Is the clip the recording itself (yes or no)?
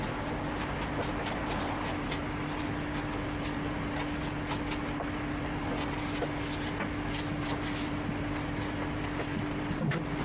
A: yes